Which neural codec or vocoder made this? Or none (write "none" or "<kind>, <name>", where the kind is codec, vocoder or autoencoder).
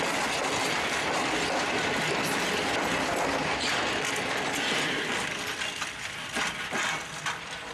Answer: none